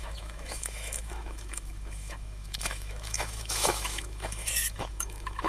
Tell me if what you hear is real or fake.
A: fake